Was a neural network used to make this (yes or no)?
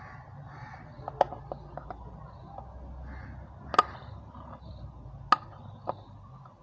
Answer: no